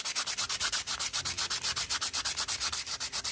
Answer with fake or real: real